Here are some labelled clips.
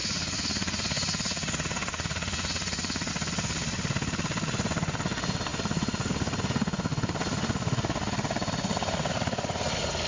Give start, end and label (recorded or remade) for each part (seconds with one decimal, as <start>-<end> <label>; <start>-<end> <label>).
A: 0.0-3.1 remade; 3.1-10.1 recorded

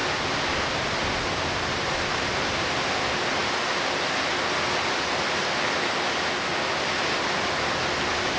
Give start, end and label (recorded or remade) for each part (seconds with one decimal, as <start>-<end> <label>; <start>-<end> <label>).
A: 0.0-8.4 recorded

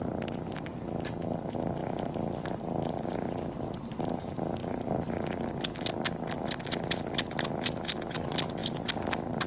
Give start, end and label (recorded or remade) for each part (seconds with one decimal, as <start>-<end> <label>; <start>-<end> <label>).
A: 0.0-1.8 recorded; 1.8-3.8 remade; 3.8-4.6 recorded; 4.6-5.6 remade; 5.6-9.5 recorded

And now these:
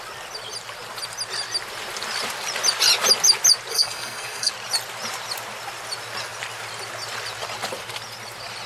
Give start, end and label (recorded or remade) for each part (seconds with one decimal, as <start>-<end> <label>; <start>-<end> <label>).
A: 0.0-3.7 recorded; 3.7-4.5 remade; 4.5-8.7 recorded

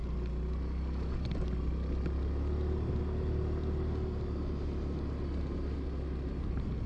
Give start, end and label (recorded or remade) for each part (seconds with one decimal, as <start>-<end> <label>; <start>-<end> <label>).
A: 0.0-6.9 recorded

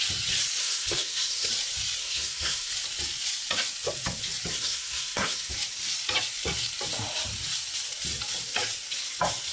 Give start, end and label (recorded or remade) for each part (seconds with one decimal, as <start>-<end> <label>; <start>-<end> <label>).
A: 0.0-0.6 recorded; 0.6-1.5 remade; 1.5-2.0 recorded; 2.0-2.7 remade; 2.7-4.5 recorded; 4.5-5.5 remade; 5.5-9.5 recorded

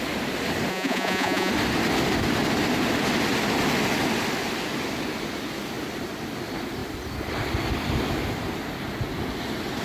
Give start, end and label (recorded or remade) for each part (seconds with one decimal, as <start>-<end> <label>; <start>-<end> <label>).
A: 0.0-0.7 recorded; 0.7-1.5 remade; 1.5-9.8 recorded

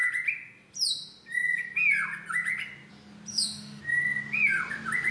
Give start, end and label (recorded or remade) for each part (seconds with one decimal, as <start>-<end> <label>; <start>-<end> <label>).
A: 0.0-3.3 recorded; 3.3-3.8 remade; 3.8-5.1 recorded